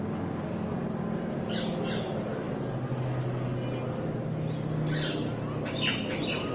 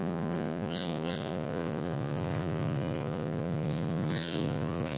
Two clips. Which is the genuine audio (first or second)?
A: first